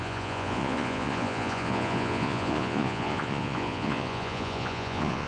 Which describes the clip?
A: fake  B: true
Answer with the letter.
A